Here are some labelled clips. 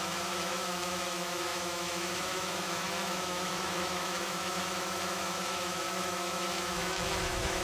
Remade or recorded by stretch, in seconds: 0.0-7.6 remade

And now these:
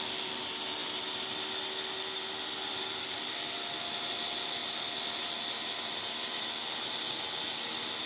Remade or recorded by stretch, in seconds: 0.0-8.1 recorded

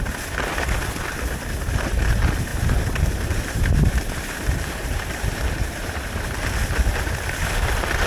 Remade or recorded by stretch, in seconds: 0.0-2.5 recorded; 2.5-6.2 remade; 6.2-8.1 recorded

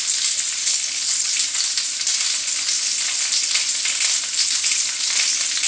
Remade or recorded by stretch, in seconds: 0.0-0.6 recorded; 0.6-1.3 remade; 1.3-5.7 recorded

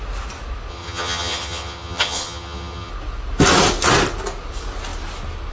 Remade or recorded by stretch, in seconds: 0.0-0.7 recorded; 0.7-2.9 remade; 2.9-5.5 recorded